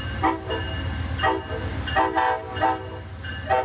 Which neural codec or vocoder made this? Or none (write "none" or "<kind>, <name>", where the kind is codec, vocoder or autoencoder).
none